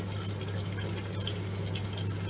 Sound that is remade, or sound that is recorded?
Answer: recorded